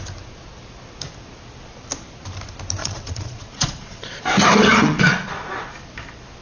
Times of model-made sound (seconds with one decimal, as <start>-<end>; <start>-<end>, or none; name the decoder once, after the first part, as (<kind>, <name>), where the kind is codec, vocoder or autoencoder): 2.8-4.2 (vocoder, Vocos); 4.7-5.5